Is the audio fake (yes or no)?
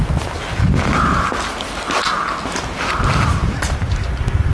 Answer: no